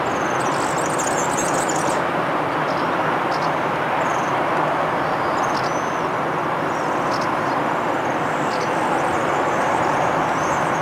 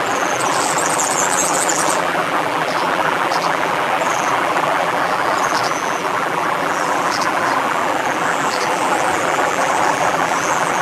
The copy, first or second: second